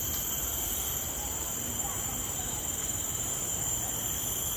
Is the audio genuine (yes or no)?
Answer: no